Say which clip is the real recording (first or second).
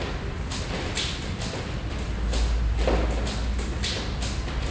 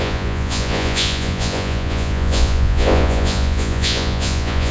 first